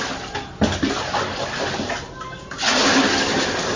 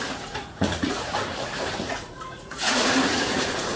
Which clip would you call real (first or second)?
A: first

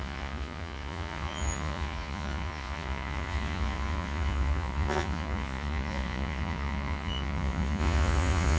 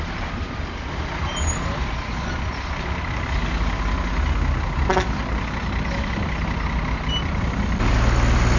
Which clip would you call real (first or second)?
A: second